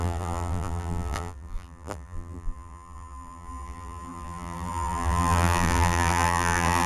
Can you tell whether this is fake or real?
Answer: fake